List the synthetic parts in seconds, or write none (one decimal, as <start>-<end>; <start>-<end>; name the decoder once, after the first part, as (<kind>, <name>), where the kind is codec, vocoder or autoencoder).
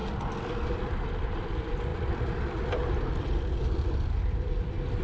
0.7-5.0 (vocoder, BigVGAN v2)